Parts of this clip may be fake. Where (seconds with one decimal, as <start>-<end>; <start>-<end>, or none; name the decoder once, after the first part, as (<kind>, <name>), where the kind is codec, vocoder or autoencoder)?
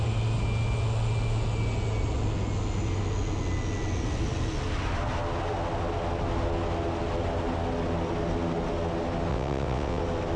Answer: 9.3-10.0 (vocoder, WaveNeXt)